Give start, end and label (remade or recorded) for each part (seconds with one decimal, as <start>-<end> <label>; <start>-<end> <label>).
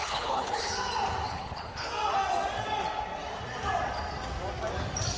0.0-0.7 remade; 0.7-1.3 recorded; 1.3-1.9 remade; 1.9-5.2 recorded